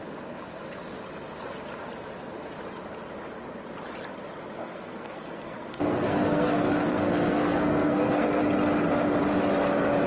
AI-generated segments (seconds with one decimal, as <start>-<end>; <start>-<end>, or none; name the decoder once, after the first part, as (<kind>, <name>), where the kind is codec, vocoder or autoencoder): 4.6-8.4 (codec, SNAC)